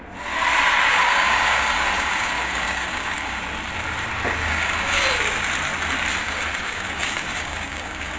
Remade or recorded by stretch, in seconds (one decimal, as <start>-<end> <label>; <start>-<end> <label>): 0.0-0.9 recorded; 0.9-3.4 remade; 3.4-4.4 recorded; 4.4-5.2 remade; 5.2-6.2 recorded; 6.2-8.2 remade